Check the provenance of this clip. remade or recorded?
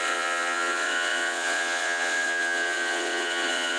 remade